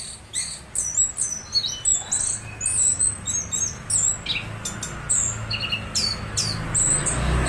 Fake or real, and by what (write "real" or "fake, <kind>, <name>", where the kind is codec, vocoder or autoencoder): real